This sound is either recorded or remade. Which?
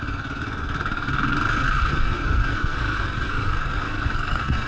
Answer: remade